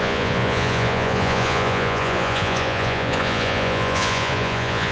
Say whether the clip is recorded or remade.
remade